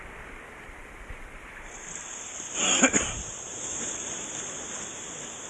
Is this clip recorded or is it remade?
recorded